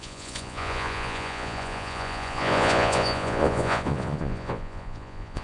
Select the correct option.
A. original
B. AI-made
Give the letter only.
B